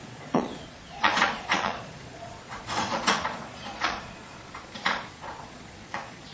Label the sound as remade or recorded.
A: remade